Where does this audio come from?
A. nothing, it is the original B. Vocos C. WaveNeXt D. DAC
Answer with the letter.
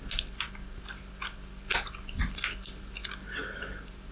A